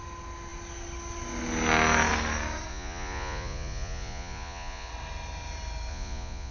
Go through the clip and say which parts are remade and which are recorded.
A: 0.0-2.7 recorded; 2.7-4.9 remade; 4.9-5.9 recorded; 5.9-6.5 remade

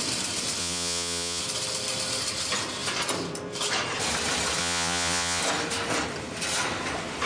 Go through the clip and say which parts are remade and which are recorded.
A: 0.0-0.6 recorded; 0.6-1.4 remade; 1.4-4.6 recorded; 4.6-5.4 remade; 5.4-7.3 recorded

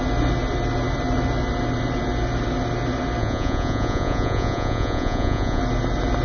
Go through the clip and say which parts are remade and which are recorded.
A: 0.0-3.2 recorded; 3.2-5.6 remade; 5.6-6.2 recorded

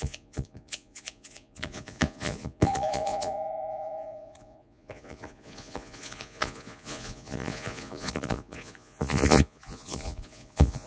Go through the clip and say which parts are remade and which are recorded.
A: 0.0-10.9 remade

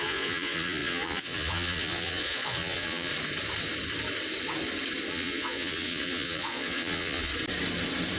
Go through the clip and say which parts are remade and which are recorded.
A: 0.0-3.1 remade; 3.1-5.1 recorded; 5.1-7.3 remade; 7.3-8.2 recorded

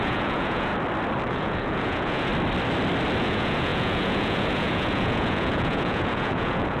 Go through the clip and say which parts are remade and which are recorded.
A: 0.0-0.7 remade; 0.7-1.3 recorded; 1.3-2.3 remade; 2.3-3.2 recorded; 3.2-6.8 remade